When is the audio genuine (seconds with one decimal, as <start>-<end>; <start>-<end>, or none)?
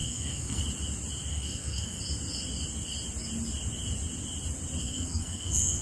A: 0.6-1.3; 2.0-4.8